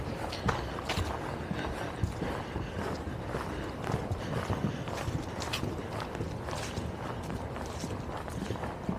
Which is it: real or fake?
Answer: real